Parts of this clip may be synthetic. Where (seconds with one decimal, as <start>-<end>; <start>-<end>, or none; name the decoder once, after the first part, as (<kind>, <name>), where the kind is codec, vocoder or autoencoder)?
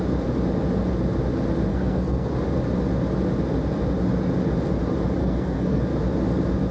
1.7-2.3 (codec, SNAC); 5.2-5.8